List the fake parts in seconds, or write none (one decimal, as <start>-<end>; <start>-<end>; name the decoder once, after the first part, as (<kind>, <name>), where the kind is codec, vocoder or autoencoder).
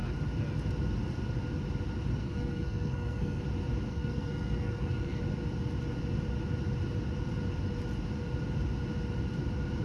2.2-3.4 (codec, SNAC); 3.9-5.2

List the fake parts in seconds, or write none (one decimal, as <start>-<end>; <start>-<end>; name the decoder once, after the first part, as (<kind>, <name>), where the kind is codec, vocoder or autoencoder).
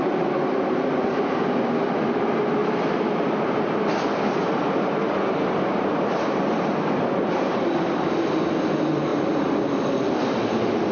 none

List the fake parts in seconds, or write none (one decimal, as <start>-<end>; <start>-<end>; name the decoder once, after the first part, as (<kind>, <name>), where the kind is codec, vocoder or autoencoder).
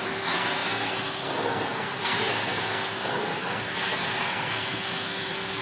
0.0-5.6 (codec, SNAC)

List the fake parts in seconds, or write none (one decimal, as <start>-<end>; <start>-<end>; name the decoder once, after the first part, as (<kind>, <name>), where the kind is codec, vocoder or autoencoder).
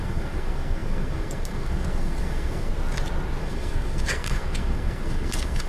0.0-2.7 (codec, SNAC); 3.4-5.7